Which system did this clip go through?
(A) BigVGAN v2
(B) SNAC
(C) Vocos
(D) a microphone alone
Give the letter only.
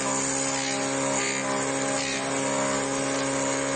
D